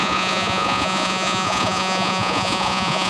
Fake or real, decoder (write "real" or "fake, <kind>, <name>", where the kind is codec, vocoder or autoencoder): fake, vocoder, Vocos